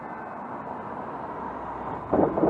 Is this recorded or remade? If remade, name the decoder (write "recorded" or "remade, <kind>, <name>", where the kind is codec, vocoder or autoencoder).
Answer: recorded